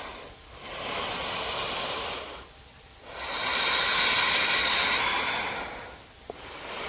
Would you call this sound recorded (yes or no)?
yes